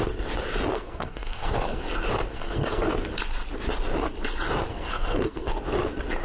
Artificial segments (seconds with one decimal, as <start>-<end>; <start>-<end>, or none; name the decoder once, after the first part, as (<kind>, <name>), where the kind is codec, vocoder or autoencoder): 0.7-1.8 (codec, SNAC); 2.3-2.9; 4.7-5.5